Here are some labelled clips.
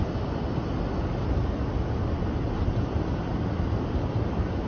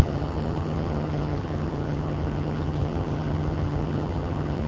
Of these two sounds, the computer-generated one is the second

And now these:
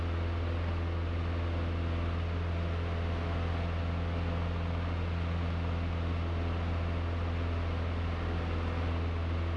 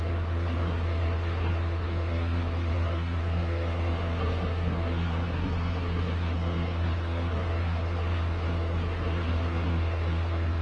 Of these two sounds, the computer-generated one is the second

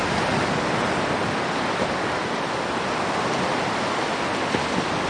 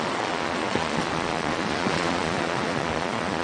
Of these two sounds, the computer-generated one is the second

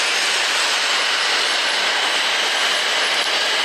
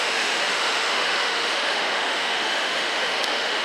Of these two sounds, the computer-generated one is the second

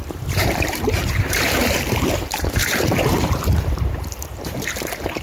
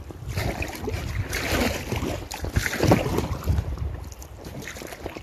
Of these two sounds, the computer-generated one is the first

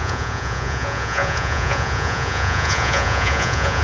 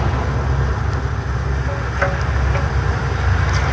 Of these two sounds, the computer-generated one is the first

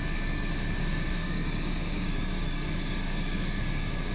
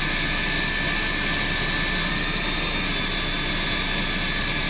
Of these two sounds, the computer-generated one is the first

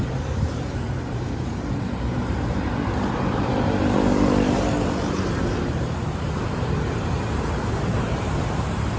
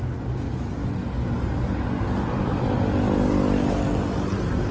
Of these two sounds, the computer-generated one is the first